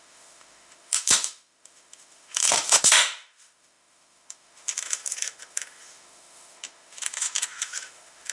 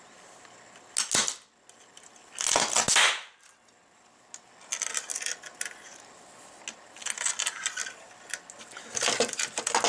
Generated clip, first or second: first